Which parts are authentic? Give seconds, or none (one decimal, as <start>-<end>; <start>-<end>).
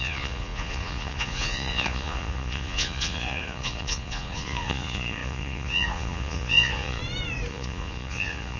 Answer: 7.0-7.5